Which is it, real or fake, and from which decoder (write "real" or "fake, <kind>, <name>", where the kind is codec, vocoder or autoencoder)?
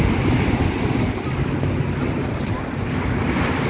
real